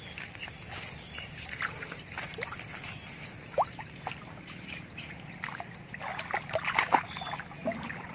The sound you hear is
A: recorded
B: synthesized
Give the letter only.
A